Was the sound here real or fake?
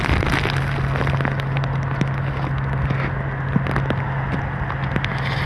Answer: real